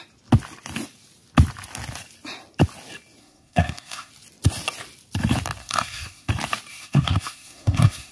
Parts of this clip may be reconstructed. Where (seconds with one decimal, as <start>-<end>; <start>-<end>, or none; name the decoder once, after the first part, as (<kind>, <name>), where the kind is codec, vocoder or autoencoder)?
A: 3.2-4.1 (codec, SNAC); 5.6-6.3; 6.7-8.1